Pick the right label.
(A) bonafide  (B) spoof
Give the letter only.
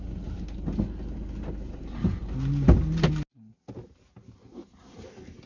A